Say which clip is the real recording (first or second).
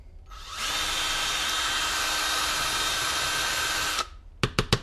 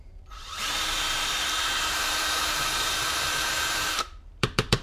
first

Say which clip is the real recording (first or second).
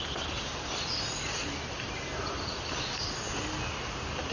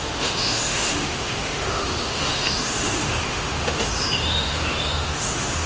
first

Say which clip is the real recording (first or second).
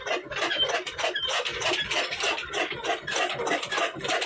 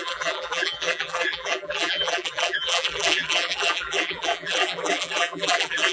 first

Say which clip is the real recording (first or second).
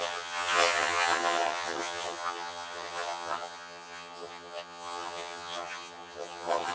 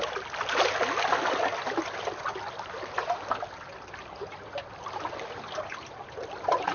second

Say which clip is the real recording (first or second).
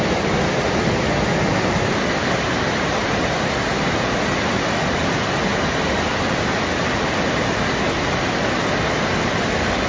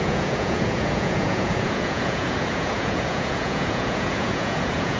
first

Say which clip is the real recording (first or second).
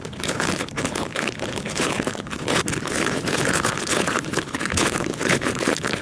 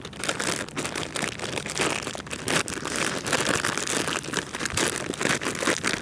second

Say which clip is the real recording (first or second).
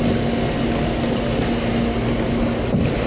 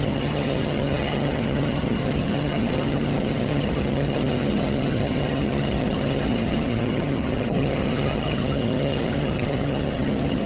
first